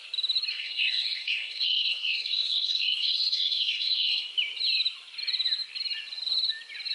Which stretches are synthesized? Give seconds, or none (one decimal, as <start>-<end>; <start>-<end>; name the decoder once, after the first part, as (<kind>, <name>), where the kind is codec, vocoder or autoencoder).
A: 0.5-4.3 (codec, SNAC)